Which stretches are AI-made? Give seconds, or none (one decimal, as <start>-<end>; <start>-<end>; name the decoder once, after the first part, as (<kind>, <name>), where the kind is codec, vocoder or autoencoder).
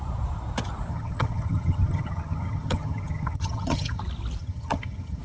0.9-4.0 (vocoder, HiFi-GAN); 4.4-5.2